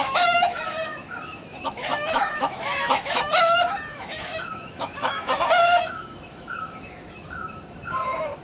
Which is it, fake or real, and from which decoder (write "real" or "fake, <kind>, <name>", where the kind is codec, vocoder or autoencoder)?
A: fake, autoencoder, DAC-VAE